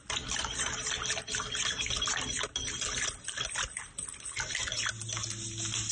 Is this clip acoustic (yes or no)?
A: yes